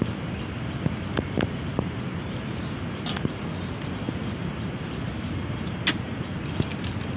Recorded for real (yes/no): yes